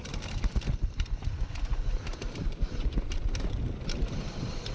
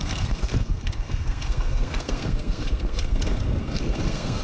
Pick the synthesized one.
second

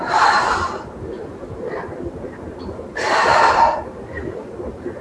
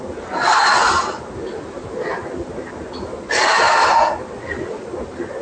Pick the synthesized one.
first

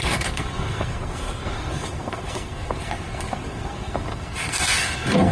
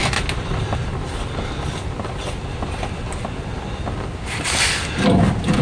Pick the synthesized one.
first